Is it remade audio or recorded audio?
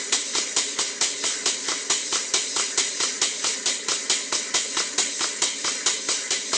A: remade